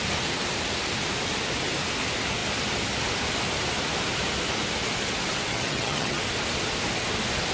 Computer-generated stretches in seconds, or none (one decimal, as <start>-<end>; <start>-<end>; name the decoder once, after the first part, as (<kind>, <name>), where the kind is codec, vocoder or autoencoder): 5.5-6.2 (vocoder, HiFi-GAN)